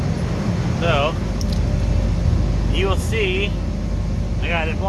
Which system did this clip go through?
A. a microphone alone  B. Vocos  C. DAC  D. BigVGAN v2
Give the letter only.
A